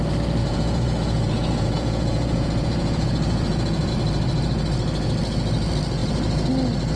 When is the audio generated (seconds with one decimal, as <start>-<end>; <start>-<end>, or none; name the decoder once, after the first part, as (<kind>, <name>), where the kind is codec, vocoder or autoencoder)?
0.4-3.9 (vocoder, Vocos)